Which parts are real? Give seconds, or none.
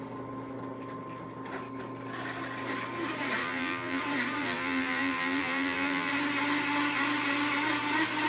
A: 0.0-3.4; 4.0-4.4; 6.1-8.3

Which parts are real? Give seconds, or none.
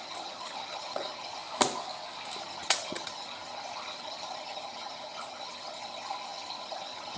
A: 1.4-2.4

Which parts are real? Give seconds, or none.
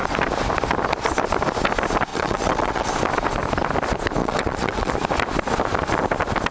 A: 0.0-2.1; 2.9-4.2; 4.9-6.5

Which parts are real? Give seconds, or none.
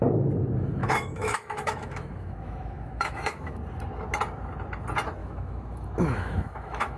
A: 0.0-0.8; 3.6-5.2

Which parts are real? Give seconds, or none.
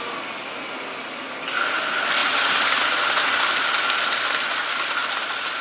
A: 0.0-5.6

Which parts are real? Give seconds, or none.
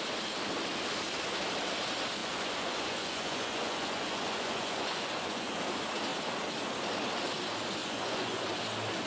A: 0.0-2.2; 5.6-7.8; 8.5-9.1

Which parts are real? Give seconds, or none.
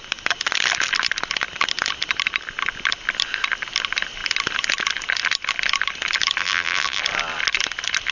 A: 0.0-6.4; 7.0-8.1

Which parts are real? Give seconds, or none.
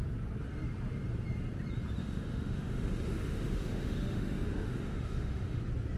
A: 0.0-2.0; 5.6-6.0